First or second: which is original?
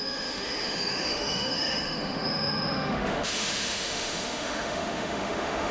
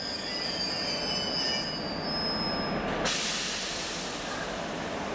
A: second